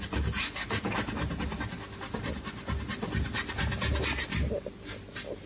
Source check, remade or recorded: recorded